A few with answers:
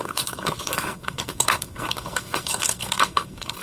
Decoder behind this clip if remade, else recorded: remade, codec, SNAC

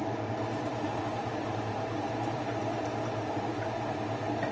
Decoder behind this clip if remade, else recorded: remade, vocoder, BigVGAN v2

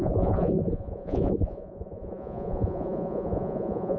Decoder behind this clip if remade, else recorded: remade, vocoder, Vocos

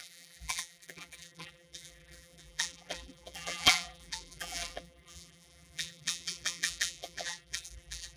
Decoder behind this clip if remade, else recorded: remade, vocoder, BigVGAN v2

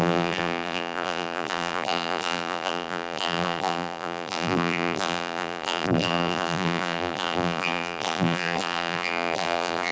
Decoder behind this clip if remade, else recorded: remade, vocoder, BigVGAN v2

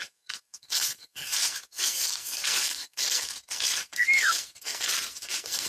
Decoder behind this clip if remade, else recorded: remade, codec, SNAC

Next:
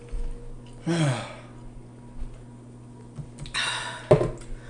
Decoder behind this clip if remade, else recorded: recorded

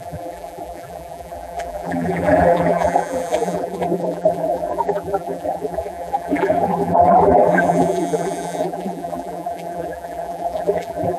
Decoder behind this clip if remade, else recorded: remade, vocoder, BigVGAN v2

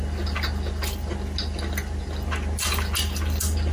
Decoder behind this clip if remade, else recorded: recorded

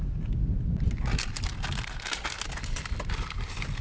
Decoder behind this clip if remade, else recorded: recorded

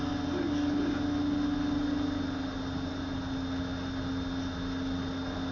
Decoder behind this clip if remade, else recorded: recorded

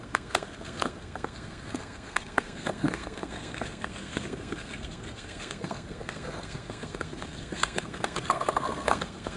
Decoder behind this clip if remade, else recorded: remade, codec, SNAC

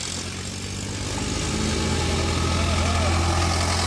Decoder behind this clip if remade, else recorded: recorded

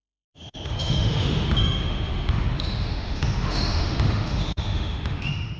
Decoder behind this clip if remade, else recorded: remade, autoencoder, DAC-VAE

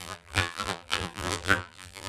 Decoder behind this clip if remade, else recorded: remade, vocoder, BigVGAN v2